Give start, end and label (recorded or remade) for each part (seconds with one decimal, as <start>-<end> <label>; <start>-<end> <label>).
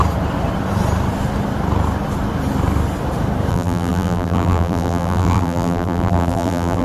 0.0-3.5 recorded; 3.5-6.8 remade